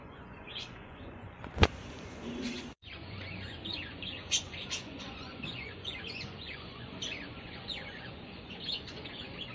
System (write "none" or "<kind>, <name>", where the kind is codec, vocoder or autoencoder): vocoder, Vocos